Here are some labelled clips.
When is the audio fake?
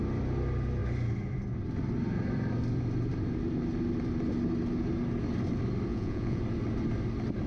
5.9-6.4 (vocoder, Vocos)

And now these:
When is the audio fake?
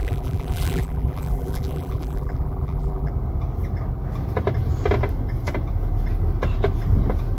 0.0-3.1 (vocoder, BigVGAN v2)